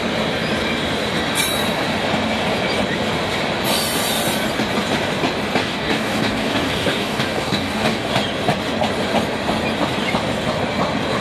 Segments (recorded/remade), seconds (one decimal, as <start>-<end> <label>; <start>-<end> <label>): 0.0-5.6 recorded; 5.6-8.1 remade; 8.1-11.2 recorded